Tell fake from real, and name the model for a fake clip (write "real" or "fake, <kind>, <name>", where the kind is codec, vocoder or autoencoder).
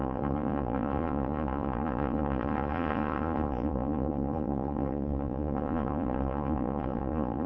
fake, vocoder, Vocos